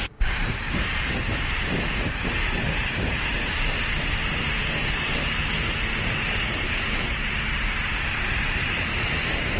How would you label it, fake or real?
fake